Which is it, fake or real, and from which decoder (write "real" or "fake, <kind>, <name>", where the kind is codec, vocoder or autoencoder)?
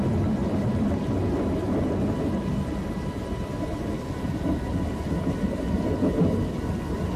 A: real